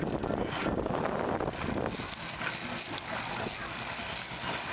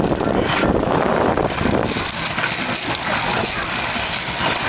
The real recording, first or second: first